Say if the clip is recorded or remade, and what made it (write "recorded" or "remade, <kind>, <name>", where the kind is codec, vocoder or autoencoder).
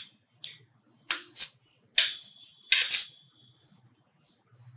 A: recorded